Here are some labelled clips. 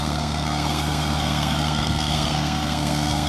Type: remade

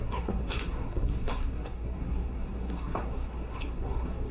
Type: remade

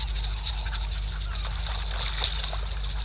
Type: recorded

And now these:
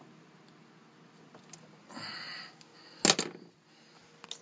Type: recorded